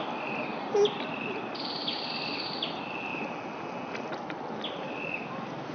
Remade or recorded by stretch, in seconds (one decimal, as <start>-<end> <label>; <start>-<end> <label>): 0.0-0.5 recorded; 0.5-2.7 remade; 2.7-5.7 recorded